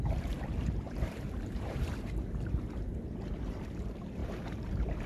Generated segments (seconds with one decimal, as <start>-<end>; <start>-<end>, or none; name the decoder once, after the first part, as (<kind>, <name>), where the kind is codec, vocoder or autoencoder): 0.0-5.1 (vocoder, BigVGAN v2)